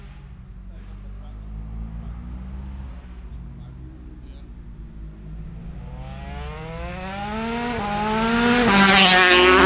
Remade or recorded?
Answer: recorded